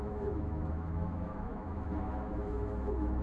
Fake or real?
fake